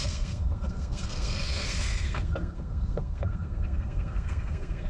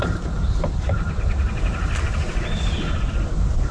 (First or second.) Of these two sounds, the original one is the second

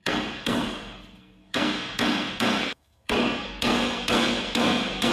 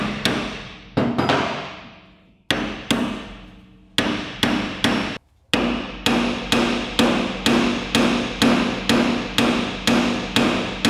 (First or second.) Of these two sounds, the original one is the second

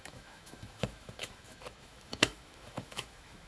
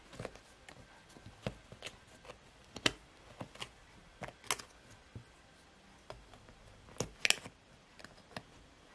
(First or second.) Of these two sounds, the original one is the second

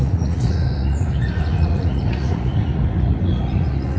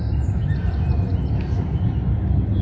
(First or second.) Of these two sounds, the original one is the second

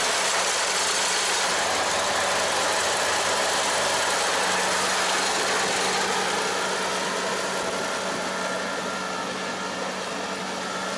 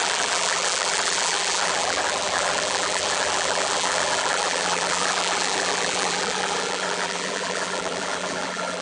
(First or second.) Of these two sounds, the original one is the first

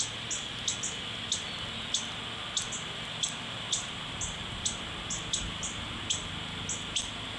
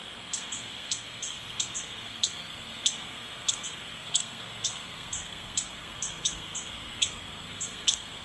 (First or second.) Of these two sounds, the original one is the first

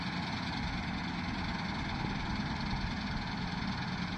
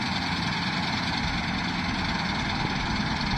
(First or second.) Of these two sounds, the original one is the first